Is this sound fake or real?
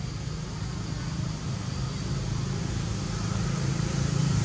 real